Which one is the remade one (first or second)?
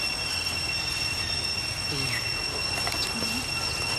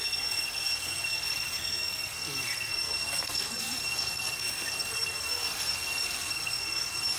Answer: second